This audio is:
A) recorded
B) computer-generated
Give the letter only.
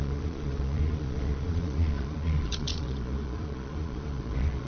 B